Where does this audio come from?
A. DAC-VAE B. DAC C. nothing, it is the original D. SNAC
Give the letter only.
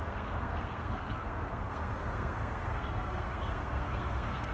D